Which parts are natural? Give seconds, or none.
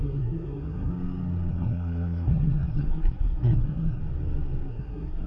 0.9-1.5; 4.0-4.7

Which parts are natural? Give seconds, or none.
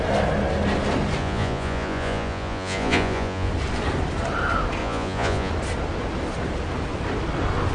0.0-1.2; 3.5-4.8; 5.5-7.7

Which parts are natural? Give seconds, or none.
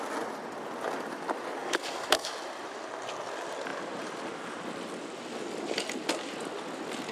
0.0-1.6; 2.3-7.1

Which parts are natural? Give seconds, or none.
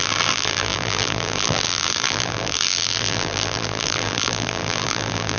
none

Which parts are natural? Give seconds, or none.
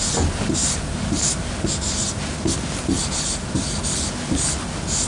0.0-5.1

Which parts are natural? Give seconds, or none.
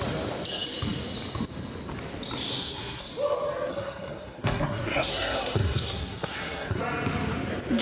0.0-2.5; 3.1-3.7; 6.8-7.8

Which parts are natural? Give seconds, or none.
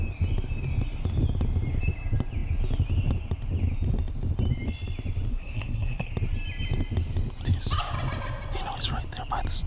0.0-5.3; 6.1-9.7